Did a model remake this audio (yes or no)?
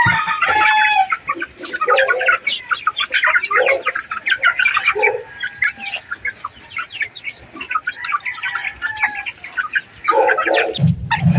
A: no